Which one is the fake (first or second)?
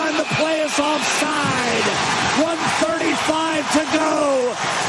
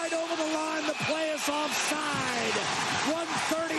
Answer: first